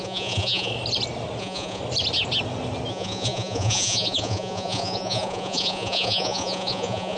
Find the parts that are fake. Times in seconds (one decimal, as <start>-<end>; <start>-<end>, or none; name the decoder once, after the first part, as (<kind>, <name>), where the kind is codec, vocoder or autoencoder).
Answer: 0.0-0.7 (vocoder, Vocos); 1.4-1.8; 2.9-7.2